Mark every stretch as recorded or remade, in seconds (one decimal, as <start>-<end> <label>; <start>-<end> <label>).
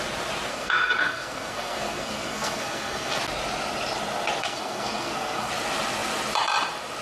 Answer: 0.0-0.5 recorded; 0.5-3.2 remade; 3.2-4.4 recorded; 4.4-5.5 remade; 5.5-7.0 recorded